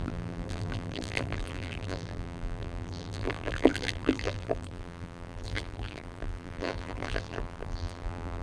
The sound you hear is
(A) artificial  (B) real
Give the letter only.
A